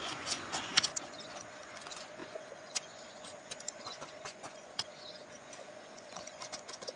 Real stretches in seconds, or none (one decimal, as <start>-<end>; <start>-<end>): none